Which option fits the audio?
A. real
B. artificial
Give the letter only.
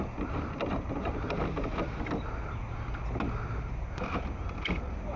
A